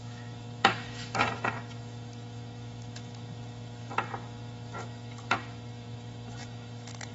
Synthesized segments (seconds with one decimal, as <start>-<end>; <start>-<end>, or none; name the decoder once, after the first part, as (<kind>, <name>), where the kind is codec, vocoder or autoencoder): 0.0-7.1 (autoencoder, DAC-VAE)